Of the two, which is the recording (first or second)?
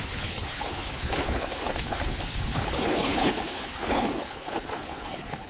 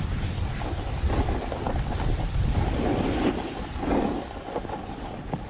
second